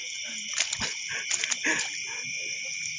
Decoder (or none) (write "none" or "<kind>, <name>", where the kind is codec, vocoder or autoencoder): vocoder, BigVGAN v2